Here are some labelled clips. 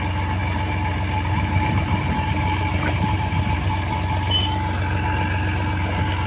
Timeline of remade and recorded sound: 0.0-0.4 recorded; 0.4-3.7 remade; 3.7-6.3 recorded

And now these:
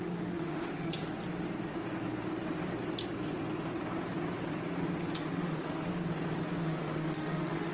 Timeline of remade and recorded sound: 0.0-1.0 remade; 1.0-5.3 recorded; 5.3-5.9 remade; 5.9-6.6 recorded; 6.6-7.7 remade

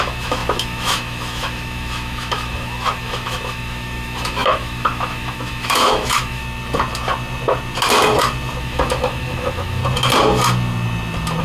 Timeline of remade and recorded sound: 0.0-6.4 remade; 6.4-8.6 recorded; 8.6-9.8 remade; 9.8-11.4 recorded

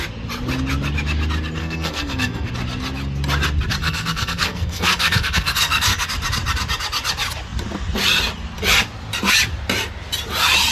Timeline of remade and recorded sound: 0.0-1.6 recorded; 1.6-2.5 remade; 2.5-3.8 recorded; 3.8-6.1 remade; 6.1-10.7 recorded

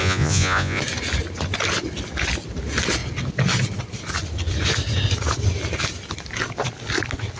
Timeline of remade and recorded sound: 0.0-0.8 remade; 0.8-7.4 recorded

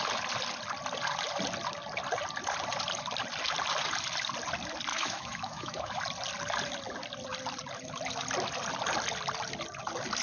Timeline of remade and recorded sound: 0.0-4.9 recorded; 4.9-6.0 remade; 6.0-10.2 recorded

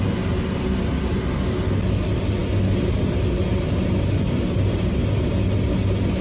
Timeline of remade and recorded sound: 0.0-6.2 recorded